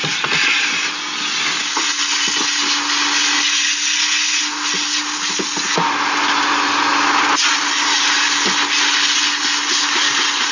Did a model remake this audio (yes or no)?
no